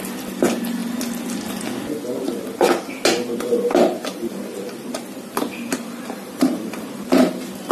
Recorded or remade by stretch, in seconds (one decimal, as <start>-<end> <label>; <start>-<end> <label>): 0.0-4.1 recorded; 4.1-5.0 remade; 5.0-5.7 recorded; 5.7-7.3 remade; 7.3-7.7 recorded